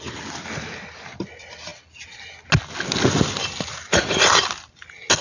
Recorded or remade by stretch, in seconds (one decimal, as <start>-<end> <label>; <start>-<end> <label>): 0.0-3.9 recorded; 3.9-4.4 remade; 4.4-5.2 recorded